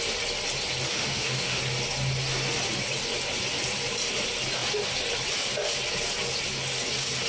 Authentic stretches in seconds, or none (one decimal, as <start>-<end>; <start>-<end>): 0.0-0.9; 1.6-7.3